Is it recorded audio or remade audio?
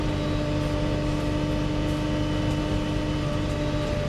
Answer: recorded